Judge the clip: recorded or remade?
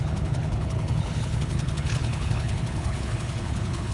remade